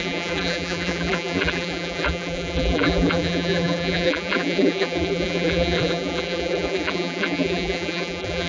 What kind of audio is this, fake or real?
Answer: fake